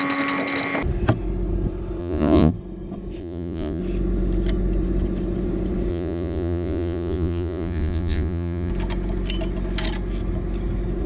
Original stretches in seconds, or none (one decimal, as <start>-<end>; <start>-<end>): 0.0-2.0; 2.5-3.2; 3.8-5.9; 8.7-11.1